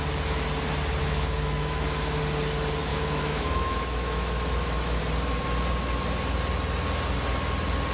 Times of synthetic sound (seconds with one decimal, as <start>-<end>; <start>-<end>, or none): 1.0-2.2; 2.9-5.0